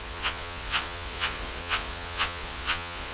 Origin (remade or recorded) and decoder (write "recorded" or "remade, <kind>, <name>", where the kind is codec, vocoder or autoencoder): remade, vocoder, Vocos